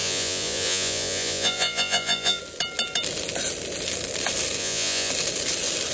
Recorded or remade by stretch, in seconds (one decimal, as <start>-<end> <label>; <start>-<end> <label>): 0.0-2.4 remade; 2.4-4.6 recorded; 4.6-5.1 remade; 5.1-5.9 recorded